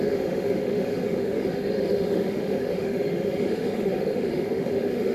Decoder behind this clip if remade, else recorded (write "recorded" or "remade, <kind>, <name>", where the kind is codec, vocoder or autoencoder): remade, autoencoder, DAC-VAE